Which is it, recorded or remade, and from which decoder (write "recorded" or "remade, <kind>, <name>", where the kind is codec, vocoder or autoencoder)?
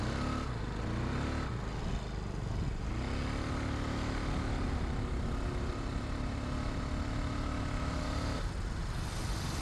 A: recorded